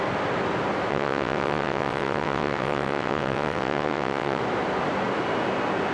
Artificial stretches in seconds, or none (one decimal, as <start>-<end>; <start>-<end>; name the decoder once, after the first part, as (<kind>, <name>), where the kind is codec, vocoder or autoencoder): 0.9-4.4 (vocoder, WaveNeXt)